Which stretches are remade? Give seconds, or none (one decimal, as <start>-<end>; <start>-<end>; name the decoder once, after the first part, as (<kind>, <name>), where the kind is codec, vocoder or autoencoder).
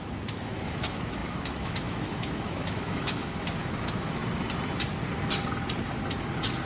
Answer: 0.0-4.2 (autoencoder, DAC-VAE)